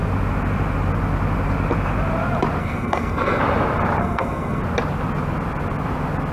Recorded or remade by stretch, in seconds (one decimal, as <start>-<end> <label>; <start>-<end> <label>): 0.0-2.6 recorded; 2.6-3.4 remade; 3.4-4.0 recorded; 4.0-4.6 remade; 4.6-6.3 recorded